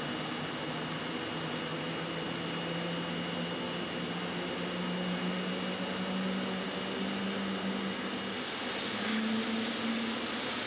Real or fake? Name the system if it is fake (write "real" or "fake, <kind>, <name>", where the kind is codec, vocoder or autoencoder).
real